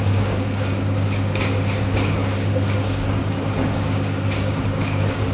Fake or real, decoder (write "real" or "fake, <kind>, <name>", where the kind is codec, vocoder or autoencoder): fake, codec, DAC